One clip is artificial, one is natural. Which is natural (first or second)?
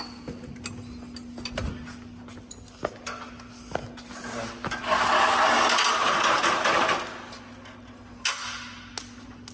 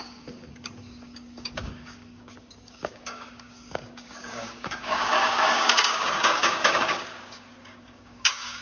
first